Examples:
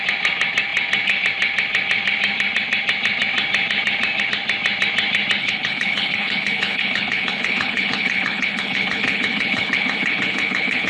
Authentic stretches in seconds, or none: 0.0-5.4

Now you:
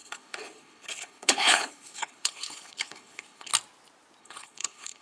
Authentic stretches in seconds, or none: 3.5-4.2

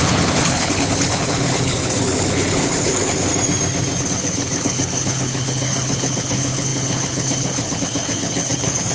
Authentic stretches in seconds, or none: 3.3-4.0